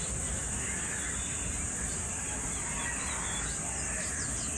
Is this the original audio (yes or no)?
yes